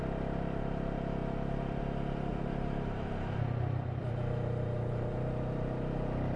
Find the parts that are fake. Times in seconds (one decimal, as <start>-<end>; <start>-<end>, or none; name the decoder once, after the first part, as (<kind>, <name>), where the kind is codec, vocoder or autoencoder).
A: 2.3-6.4 (vocoder, BigVGAN v2)